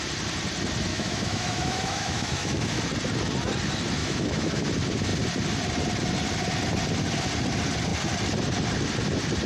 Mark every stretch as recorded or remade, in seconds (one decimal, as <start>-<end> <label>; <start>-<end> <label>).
0.0-0.9 recorded; 0.9-2.8 remade; 2.8-4.0 recorded; 4.0-4.6 remade; 4.6-9.5 recorded